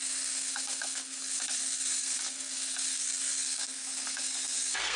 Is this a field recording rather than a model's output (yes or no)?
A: no